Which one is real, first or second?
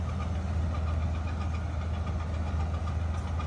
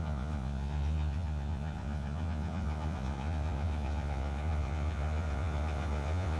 first